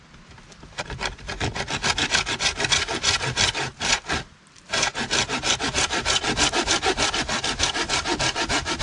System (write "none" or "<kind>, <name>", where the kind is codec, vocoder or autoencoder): none